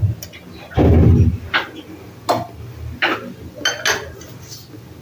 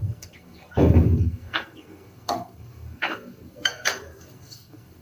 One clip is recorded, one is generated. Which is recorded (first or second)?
first